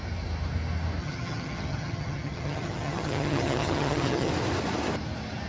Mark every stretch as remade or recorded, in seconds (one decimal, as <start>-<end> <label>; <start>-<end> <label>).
0.0-1.0 recorded; 1.0-4.3 remade; 4.3-5.5 recorded